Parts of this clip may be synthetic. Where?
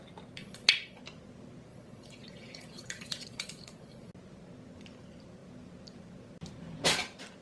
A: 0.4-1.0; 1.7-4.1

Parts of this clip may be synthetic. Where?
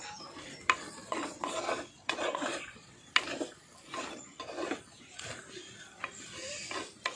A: 1.0-3.0